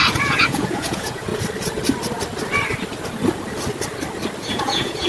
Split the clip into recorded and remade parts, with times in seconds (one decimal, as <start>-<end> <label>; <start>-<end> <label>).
0.0-1.3 remade; 1.3-4.4 recorded; 4.4-5.1 remade